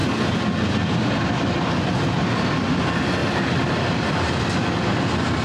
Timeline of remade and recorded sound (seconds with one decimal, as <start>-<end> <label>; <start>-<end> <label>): 0.0-3.2 recorded; 3.2-4.4 remade; 4.4-5.4 recorded